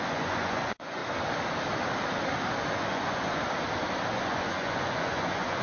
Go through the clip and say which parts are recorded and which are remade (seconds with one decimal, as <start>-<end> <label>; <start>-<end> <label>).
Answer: 0.0-1.0 remade; 1.0-2.7 recorded; 2.7-3.4 remade; 3.4-4.1 recorded; 4.1-5.6 remade

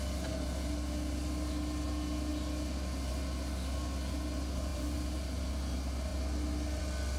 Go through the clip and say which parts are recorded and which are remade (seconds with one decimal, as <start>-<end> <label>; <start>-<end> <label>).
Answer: 0.0-4.7 recorded; 4.7-5.5 remade; 5.5-7.2 recorded

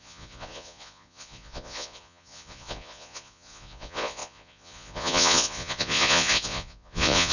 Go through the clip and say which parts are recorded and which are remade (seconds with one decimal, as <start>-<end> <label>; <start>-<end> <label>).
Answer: 0.0-7.3 remade

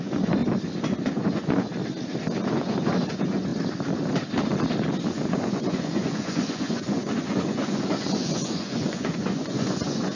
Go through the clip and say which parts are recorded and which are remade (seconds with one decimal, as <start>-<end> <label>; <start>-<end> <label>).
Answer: 0.0-0.4 remade; 0.4-1.1 recorded; 1.1-1.7 remade; 1.7-2.5 recorded; 2.5-3.5 remade; 3.5-5.1 recorded; 5.1-10.2 remade